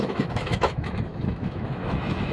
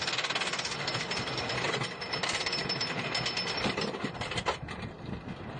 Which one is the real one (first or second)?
second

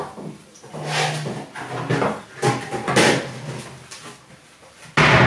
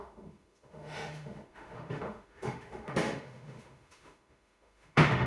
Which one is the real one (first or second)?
first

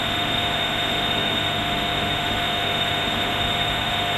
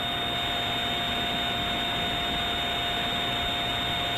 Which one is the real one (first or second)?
second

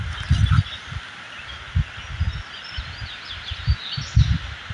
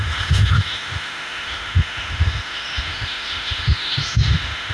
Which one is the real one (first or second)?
first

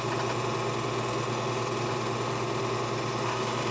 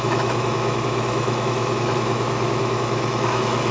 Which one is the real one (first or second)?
first